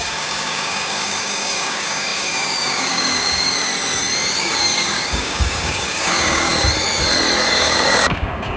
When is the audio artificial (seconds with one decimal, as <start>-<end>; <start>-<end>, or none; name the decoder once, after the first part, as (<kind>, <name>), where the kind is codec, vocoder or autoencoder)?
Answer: 0.0-3.7 (codec, DAC); 4.4-6.5; 7.5-8.6